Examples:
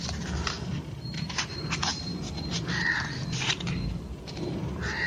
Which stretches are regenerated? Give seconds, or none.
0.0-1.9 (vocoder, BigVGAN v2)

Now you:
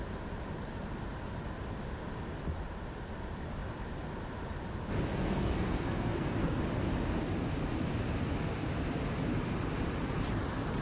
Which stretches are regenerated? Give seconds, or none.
5.1-6.6 (codec, SNAC)

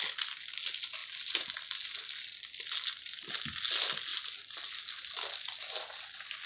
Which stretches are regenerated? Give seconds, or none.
none

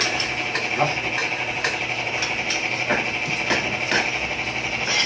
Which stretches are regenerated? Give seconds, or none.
none

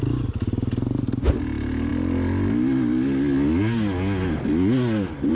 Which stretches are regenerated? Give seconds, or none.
none